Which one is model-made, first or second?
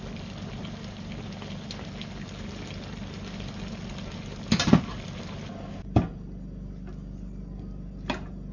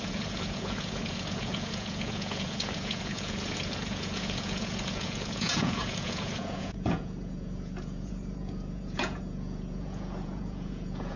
second